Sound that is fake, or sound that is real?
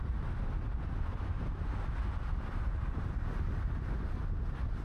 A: real